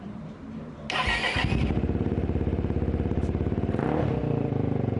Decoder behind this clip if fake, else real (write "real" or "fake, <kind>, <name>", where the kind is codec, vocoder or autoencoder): real